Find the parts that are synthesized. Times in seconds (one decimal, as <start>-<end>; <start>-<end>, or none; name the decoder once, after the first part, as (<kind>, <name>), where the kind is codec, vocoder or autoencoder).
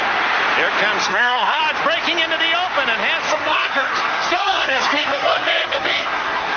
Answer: 1.0-1.6 (codec, SNAC); 3.2-6.6